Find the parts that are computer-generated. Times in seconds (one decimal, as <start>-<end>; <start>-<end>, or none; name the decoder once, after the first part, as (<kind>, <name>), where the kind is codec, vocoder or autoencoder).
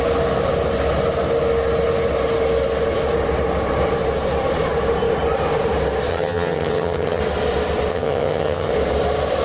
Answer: 6.1-7.2 (vocoder, HiFi-GAN); 7.9-8.7